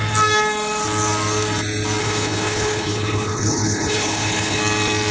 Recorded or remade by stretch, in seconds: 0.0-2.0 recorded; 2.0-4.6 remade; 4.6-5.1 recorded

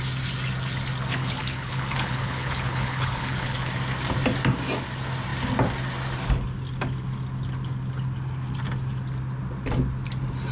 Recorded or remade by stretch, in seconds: 0.0-1.2 recorded; 1.2-3.7 remade; 3.7-10.5 recorded

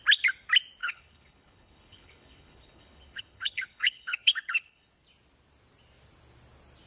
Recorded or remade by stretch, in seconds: 0.0-0.8 recorded; 0.8-4.9 remade; 4.9-6.9 recorded

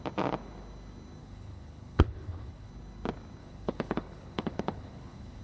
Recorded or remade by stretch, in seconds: 0.0-1.2 recorded; 1.2-2.7 remade; 2.7-3.4 recorded; 3.4-5.4 remade